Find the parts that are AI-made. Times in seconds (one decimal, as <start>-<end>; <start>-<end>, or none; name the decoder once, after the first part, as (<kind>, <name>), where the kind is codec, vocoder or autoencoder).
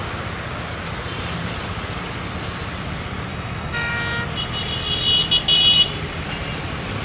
3.3-3.9 (autoencoder, DAC-VAE)